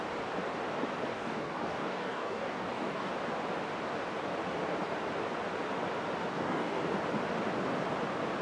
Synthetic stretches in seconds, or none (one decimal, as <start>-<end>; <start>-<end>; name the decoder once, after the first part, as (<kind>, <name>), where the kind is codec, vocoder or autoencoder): 1.1-3.1 (codec, DAC); 6.3-6.8

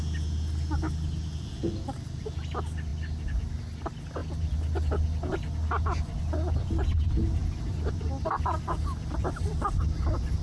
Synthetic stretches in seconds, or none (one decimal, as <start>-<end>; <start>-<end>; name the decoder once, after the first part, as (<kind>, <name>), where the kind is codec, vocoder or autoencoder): none

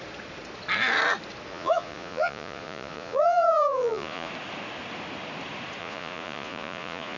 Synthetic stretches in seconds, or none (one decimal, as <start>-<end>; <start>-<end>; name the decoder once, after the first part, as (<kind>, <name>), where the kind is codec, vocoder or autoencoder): 1.5-4.3 (vocoder, Vocos); 5.8-7.2

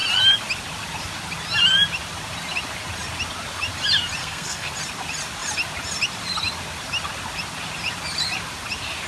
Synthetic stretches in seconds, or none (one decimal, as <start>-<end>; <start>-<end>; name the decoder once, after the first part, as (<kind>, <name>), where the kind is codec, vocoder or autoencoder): 4.2-4.7 (codec, SNAC)

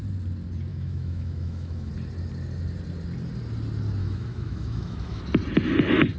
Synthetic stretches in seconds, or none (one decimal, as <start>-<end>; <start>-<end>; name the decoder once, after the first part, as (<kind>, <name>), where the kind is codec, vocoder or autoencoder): 0.7-1.9 (autoencoder, DAC-VAE); 4.0-5.2

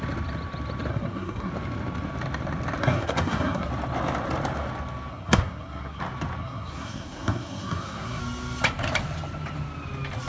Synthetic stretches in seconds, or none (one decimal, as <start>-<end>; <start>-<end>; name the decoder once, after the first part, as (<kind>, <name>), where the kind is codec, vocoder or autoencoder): 0.9-1.5 (codec, SNAC); 2.8-3.7; 5.1-6.0; 6.4-8.2

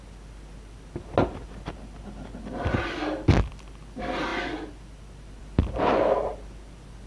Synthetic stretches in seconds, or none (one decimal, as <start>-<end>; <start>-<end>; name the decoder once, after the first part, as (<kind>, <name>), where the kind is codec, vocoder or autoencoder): none